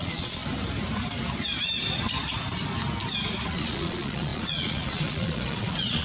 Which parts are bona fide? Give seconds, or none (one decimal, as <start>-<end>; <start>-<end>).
0.4-3.5